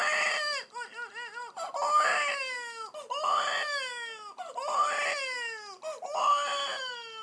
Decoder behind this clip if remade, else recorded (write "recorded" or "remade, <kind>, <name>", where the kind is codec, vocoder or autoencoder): recorded